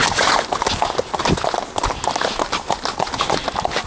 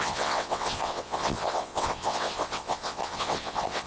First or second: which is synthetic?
second